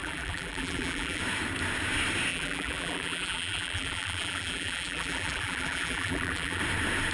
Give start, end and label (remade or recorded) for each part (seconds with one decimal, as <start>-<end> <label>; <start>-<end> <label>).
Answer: 0.0-1.2 remade; 1.2-2.3 recorded; 2.3-6.6 remade; 6.6-7.1 recorded